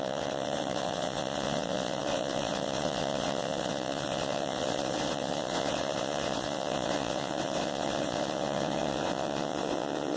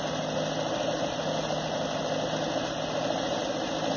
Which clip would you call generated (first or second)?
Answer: first